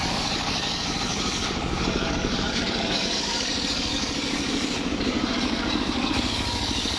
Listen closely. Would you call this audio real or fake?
fake